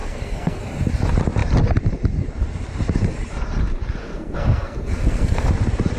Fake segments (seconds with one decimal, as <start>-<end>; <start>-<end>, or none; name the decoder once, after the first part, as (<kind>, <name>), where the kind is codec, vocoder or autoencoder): 0.0-0.6 (codec, SNAC); 4.0-5.5

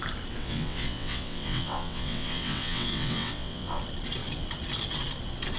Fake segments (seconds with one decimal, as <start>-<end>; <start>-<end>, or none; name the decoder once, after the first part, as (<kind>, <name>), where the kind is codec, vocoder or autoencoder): 0.4-3.8 (vocoder, WaveNeXt)

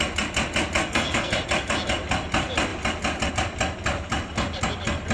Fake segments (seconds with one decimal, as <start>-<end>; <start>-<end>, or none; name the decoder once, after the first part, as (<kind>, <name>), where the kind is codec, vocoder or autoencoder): 0.8-1.3 (codec, SNAC)

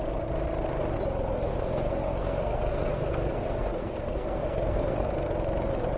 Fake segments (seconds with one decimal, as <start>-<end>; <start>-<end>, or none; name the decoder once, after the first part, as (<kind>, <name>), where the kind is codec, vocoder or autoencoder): 1.5-5.1 (codec, SNAC)